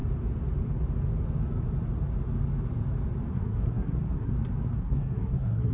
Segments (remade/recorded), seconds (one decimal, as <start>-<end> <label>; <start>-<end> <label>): 0.0-3.3 recorded; 3.3-4.3 remade; 4.3-4.8 recorded; 4.8-5.7 remade